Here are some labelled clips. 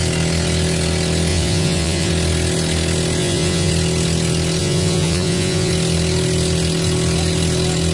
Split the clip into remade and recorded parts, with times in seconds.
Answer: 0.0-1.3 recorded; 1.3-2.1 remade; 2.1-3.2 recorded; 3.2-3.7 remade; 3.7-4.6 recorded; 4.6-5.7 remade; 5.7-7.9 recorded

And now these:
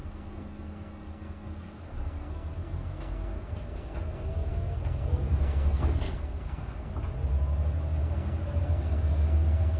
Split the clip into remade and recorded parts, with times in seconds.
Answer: 0.0-6.9 remade; 6.9-8.0 recorded; 8.0-9.8 remade